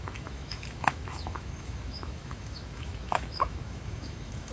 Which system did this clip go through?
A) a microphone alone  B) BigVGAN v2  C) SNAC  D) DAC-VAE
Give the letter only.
D